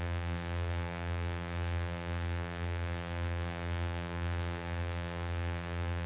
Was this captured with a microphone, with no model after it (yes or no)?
no